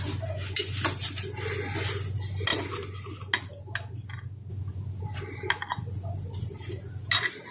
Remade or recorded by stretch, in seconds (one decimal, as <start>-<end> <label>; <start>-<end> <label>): 0.0-7.5 recorded